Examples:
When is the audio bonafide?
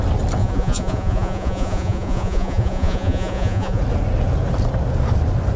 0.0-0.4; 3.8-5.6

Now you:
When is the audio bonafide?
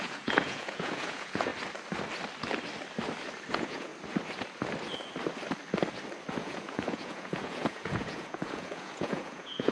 1.5-3.5; 3.9-6.3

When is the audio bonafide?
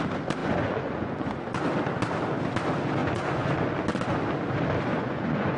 0.0-0.4; 1.6-3.0; 3.5-4.9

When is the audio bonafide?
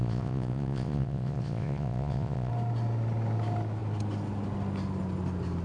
2.5-5.6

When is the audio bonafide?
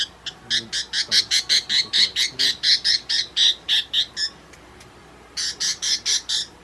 0.0-6.6